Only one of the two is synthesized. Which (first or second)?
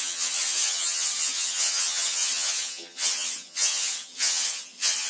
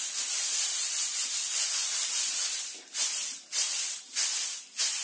first